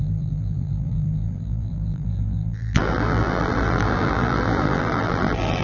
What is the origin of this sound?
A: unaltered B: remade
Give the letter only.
B